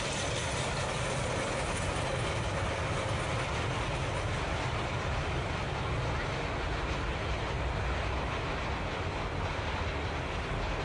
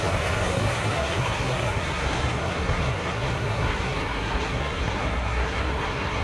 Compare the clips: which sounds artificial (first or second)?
second